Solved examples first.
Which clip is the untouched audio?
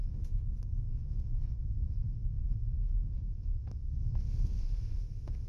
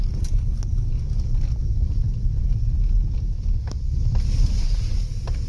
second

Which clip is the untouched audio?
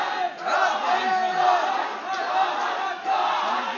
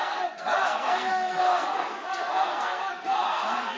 first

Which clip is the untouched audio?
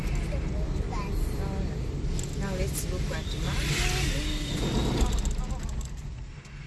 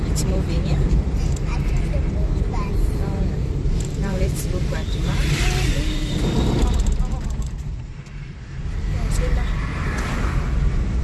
first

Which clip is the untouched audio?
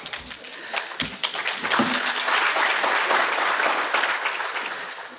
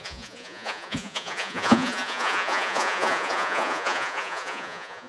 first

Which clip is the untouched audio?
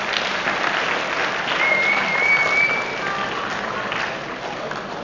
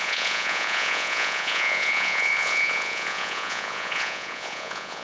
first